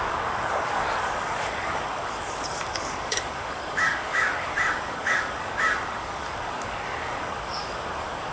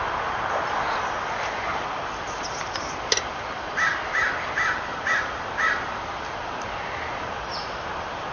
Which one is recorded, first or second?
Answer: second